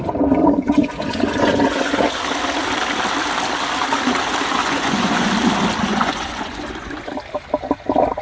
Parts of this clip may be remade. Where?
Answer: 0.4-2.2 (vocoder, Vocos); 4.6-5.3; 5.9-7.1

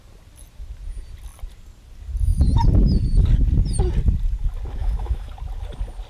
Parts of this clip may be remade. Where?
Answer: 4.8-5.3 (autoencoder, DAC-VAE)

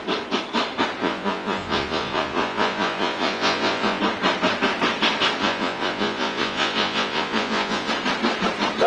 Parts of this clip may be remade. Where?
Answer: 1.0-4.0 (vocoder, Vocos); 5.4-7.9

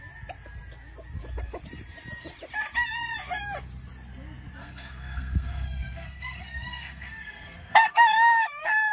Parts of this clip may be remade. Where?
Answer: 4.6-8.9 (codec, SNAC)

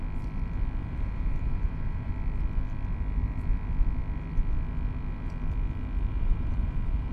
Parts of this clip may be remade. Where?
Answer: 0.8-2.1 (vocoder, BigVGAN v2); 6.1-7.1

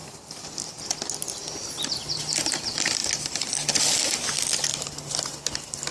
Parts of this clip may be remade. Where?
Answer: 3.0-3.8 (vocoder, BigVGAN v2); 4.7-5.9

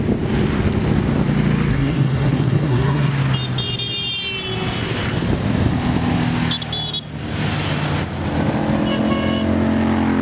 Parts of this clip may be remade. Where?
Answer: 1.7-3.1 (codec, SNAC)